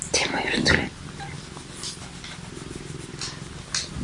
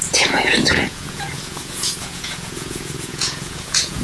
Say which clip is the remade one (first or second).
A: second